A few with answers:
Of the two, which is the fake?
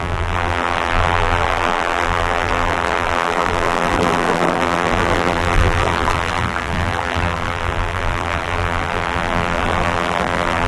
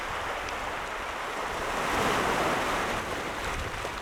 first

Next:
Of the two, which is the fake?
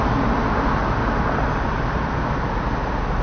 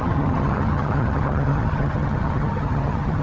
second